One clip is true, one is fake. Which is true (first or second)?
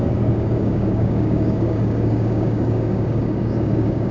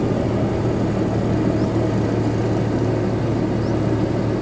second